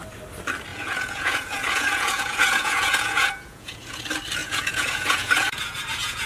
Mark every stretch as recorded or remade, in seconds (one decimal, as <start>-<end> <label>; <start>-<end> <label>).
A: 0.0-0.7 recorded; 0.7-4.0 remade; 4.0-4.4 recorded; 4.4-6.3 remade